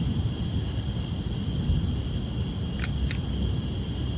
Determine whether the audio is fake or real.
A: real